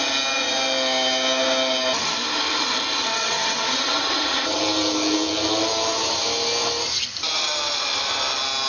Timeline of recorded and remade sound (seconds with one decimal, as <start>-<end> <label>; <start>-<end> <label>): 0.0-3.1 recorded; 3.1-4.6 remade; 4.6-8.7 recorded